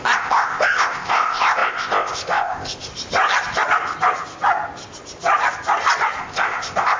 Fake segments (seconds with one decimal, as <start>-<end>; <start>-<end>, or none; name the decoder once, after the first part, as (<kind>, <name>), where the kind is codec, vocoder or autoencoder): 0.0-2.9 (codec, ZipCodec); 6.2-7.0